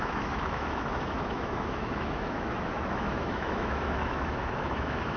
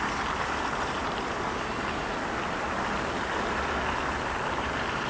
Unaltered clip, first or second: second